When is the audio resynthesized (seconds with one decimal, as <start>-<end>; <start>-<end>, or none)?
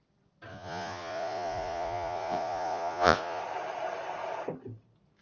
0.5-3.4